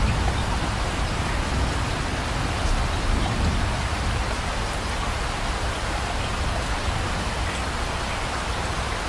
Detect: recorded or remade recorded